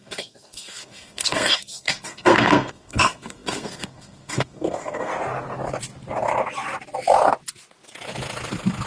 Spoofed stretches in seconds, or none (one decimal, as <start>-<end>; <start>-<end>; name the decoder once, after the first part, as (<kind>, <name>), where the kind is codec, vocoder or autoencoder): 0.0-5.1 (codec, SNAC)